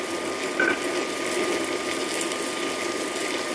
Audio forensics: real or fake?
real